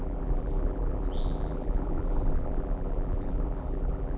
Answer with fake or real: fake